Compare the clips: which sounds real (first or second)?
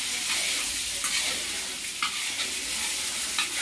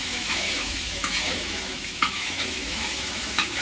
first